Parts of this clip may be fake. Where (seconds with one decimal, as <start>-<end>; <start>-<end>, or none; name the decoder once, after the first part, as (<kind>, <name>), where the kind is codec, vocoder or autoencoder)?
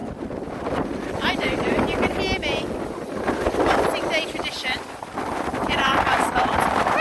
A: none